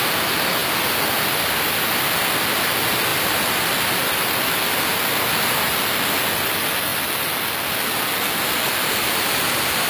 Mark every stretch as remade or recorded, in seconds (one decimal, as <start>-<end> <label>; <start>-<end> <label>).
0.0-9.9 recorded